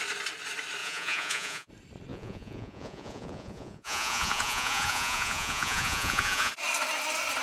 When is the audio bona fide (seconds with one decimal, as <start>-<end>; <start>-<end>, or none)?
0.0-0.8; 1.7-2.1; 6.5-7.4